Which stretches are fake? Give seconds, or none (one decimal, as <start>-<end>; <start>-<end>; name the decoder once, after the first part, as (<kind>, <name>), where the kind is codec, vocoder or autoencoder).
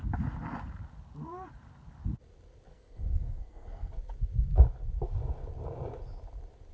2.7-3.9 (codec, SNAC)